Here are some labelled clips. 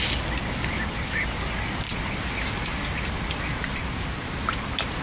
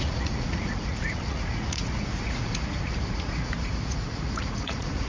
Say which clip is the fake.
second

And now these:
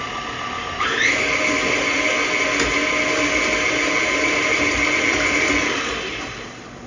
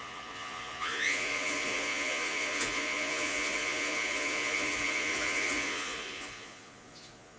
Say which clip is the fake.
second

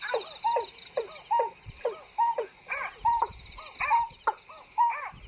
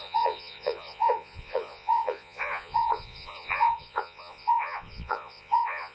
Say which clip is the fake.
second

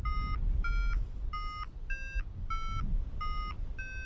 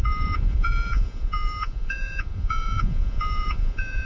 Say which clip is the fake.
second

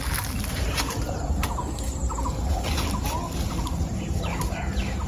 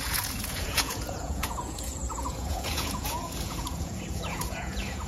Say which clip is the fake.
second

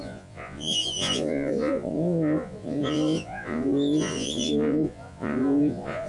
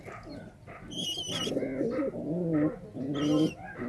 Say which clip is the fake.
first